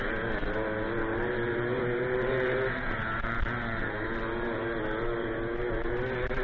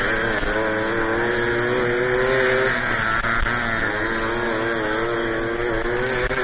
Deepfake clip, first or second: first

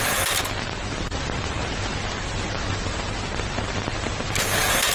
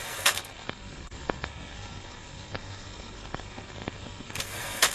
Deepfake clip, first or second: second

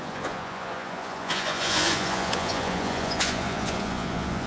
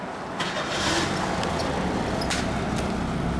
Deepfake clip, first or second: first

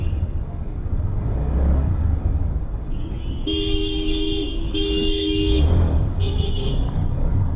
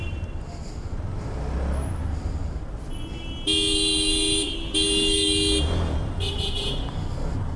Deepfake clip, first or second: first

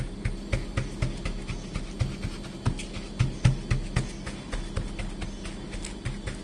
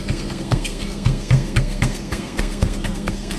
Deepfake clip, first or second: second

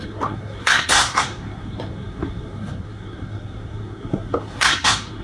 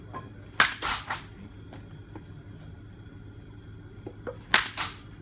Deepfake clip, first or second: first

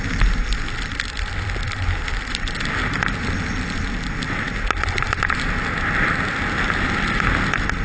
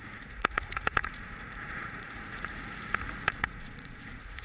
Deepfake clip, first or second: second